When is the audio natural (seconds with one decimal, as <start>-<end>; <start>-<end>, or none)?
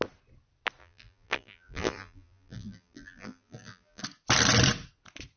0.0-0.8; 4.0-5.4